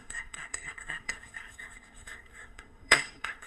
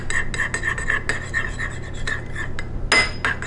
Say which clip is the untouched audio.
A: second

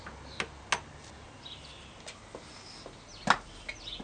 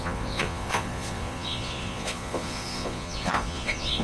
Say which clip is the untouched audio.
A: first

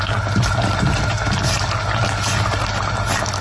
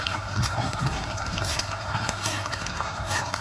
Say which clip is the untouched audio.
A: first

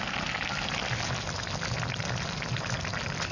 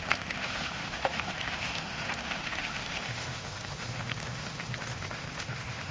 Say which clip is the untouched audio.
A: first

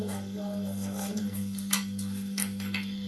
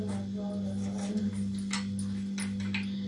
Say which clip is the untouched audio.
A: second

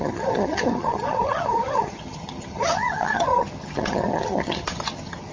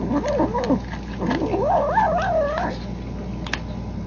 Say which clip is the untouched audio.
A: second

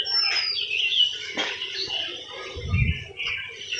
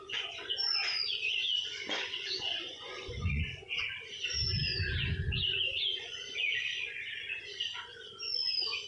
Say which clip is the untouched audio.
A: first